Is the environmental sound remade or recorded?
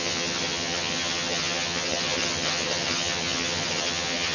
remade